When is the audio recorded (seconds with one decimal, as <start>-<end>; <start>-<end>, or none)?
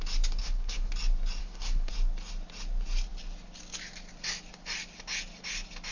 0.0-0.4; 0.9-1.4; 1.9-5.9